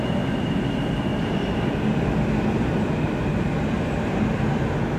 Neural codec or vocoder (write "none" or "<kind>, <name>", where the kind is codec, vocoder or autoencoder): none